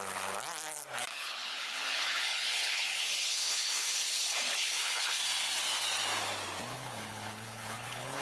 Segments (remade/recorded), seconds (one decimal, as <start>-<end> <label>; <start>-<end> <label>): 0.0-1.1 recorded; 1.1-5.2 remade; 5.2-6.7 recorded; 6.7-8.2 remade